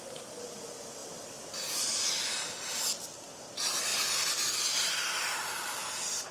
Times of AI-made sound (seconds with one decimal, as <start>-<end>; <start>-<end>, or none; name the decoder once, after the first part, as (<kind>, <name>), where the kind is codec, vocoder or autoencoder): 1.0-3.2 (vocoder, BigVGAN v2); 3.9-5.2